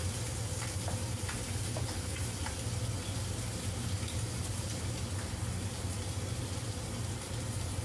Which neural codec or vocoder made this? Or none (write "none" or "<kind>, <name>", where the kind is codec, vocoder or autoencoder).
none